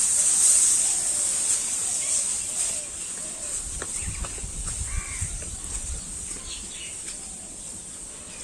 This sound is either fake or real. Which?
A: real